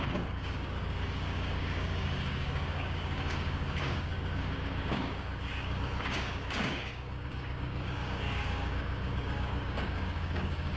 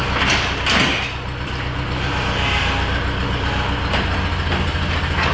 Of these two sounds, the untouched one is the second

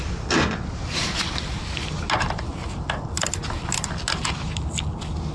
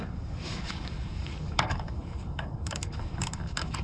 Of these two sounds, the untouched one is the first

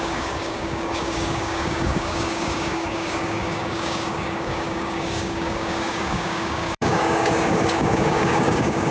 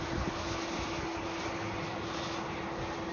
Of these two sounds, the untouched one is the second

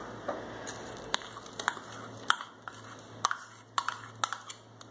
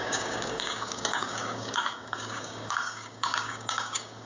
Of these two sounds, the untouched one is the first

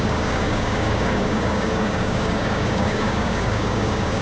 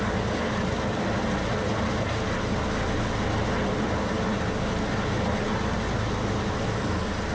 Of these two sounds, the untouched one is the second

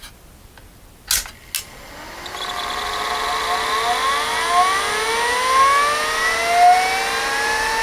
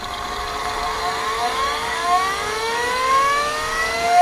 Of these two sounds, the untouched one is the first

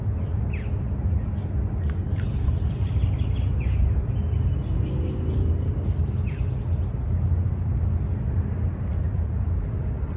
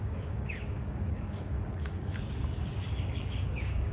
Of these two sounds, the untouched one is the first